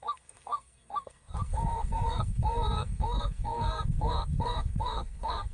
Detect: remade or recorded remade